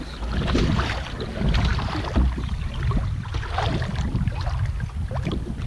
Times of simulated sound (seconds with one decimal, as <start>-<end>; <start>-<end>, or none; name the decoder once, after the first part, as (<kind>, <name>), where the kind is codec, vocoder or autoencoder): none